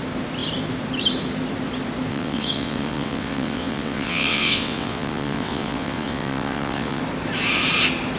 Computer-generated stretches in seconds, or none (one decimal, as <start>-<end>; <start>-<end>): 2.1-7.0